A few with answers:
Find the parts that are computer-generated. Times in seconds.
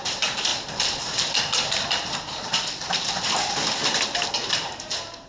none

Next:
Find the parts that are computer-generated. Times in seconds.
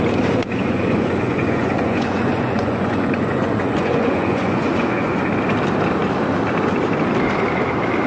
0.4-5.3 (vocoder, Vocos)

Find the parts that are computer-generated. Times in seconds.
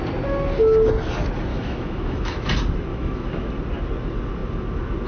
1.5-2.5 (autoencoder, DAC-VAE); 2.9-3.5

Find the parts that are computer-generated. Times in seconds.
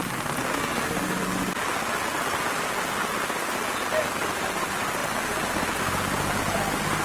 none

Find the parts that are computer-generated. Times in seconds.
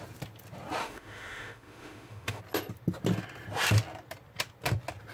0.8-2.4 (autoencoder, DAC-VAE)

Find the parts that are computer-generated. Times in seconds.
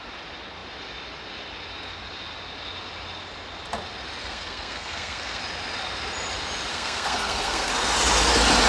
4.2-5.4 (codec, SNAC); 6.7-7.7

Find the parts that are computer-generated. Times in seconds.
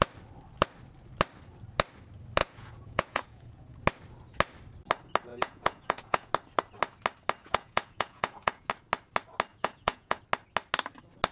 2.4-3.8 (vocoder, Vocos); 5.3-6.3; 7.4-8.7; 9.5-10.2